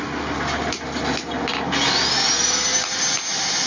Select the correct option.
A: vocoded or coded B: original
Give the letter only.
B